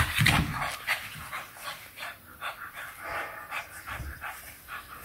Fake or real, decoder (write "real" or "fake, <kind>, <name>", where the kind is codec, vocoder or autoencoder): real